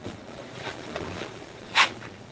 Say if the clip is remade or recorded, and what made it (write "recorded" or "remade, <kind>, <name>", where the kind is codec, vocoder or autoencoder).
remade, vocoder, Vocos